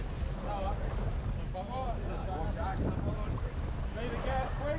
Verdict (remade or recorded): recorded